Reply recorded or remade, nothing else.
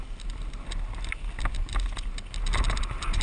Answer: recorded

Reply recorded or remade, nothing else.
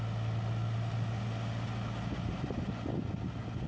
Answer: recorded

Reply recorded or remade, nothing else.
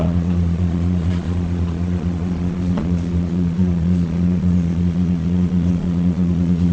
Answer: remade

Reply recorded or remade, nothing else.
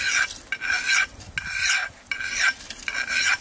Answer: recorded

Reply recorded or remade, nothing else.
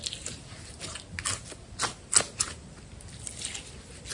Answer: recorded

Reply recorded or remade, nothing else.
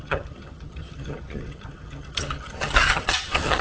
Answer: remade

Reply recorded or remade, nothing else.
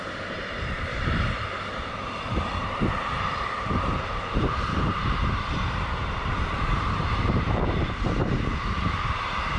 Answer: remade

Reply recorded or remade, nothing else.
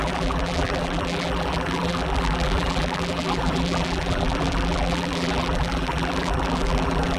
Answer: remade